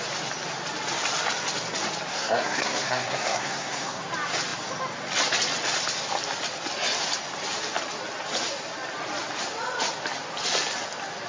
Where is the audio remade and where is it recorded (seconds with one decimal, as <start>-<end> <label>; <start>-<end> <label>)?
0.0-2.1 recorded; 2.1-4.0 remade; 4.0-11.3 recorded